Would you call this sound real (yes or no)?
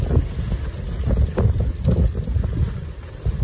yes